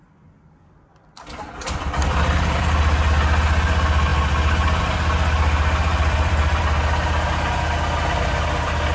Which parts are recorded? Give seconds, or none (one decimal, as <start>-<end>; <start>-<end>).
0.0-0.9; 3.1-5.9; 6.6-8.9